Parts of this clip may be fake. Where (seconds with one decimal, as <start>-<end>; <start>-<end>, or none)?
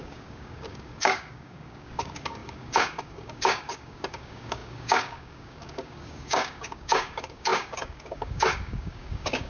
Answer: 0.0-9.5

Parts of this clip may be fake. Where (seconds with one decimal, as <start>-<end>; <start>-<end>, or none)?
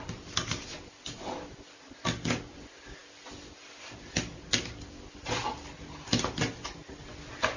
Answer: none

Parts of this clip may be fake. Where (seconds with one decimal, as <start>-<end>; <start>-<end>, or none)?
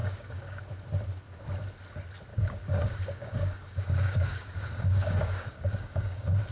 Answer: 0.0-0.6; 2.3-6.5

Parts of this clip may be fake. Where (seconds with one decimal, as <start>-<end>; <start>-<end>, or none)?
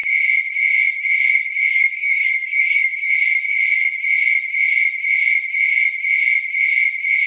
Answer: 1.7-3.1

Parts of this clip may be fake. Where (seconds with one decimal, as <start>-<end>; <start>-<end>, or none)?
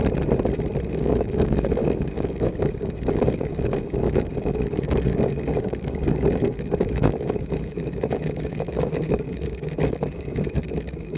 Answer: 0.9-11.2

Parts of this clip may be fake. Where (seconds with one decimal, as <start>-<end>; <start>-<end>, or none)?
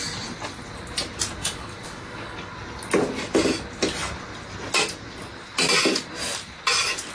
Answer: 1.4-2.5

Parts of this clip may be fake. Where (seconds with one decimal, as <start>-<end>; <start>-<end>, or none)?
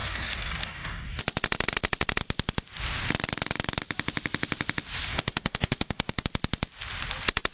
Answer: 0.0-1.2; 5.1-6.2